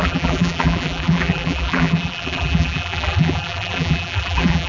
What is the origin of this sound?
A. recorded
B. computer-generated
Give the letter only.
B